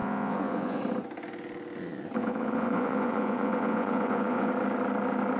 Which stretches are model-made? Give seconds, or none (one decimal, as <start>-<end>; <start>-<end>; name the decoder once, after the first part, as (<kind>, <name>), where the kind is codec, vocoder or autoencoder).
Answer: 0.0-0.8 (vocoder, Vocos); 2.2-4.5